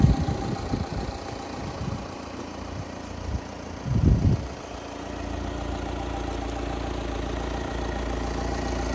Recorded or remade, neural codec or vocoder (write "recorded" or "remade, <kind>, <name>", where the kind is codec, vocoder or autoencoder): recorded